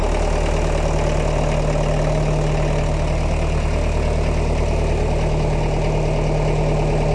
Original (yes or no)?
yes